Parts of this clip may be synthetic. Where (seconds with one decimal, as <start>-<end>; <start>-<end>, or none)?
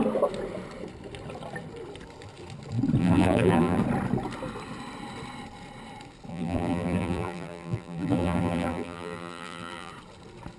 3.0-3.8; 6.3-9.9